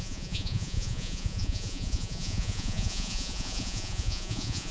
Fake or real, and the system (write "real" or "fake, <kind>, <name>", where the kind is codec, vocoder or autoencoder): fake, vocoder, Vocos